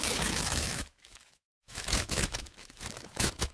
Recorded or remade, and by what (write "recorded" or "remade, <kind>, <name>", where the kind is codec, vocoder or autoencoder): remade, autoencoder, DAC-VAE